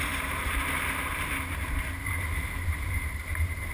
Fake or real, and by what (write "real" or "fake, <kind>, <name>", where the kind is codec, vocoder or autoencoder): fake, vocoder, BigVGAN v2